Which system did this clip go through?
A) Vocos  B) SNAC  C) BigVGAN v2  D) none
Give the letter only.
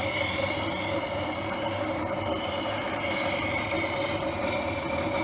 C